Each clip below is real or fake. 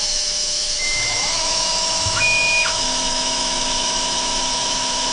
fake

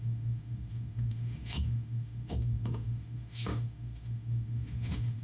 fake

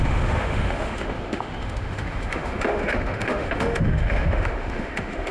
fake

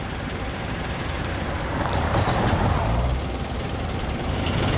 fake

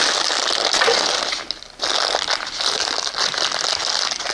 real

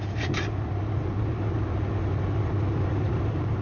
real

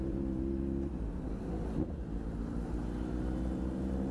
real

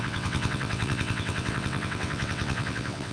fake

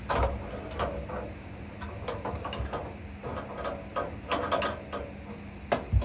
real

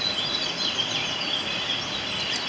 real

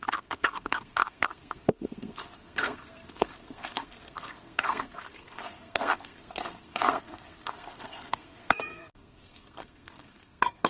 fake